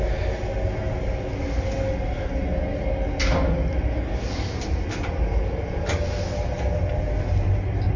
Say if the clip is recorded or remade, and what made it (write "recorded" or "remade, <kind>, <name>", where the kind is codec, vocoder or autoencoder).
recorded